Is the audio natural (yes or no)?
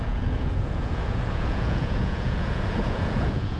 no